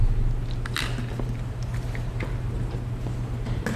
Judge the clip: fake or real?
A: real